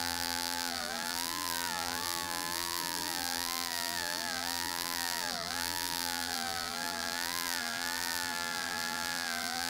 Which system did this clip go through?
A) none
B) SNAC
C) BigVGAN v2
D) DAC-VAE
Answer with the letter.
C